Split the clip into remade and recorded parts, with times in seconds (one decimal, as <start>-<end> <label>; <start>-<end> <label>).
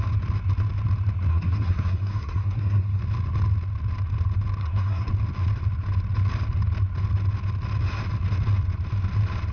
0.0-1.3 recorded; 1.3-3.0 remade; 3.0-4.6 recorded; 4.6-5.1 remade; 5.1-9.5 recorded